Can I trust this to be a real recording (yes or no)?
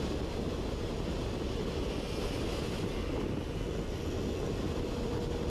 yes